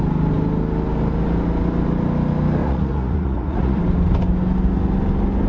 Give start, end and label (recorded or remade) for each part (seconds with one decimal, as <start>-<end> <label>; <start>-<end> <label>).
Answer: 0.0-2.6 recorded; 2.6-3.8 remade; 3.8-5.5 recorded